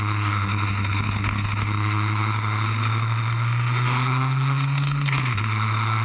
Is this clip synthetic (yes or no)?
yes